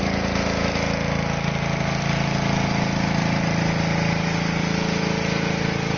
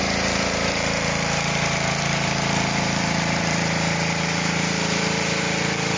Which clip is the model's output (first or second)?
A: second